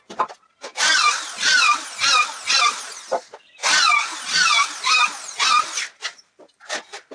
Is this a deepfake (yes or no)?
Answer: no